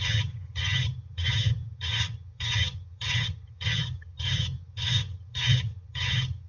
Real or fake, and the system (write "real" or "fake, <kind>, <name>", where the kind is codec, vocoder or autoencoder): fake, vocoder, HiFi-GAN